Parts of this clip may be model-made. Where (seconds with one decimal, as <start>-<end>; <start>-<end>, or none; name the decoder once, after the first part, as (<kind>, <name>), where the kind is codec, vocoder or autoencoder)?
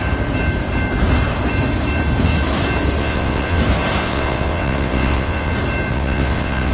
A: 3.0-3.6 (vocoder, WaveNeXt); 4.0-5.5; 5.9-6.7